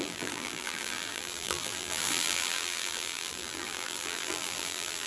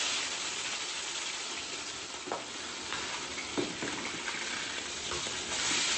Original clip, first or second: second